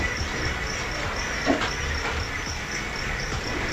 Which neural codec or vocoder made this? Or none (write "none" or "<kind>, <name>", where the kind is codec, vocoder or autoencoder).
none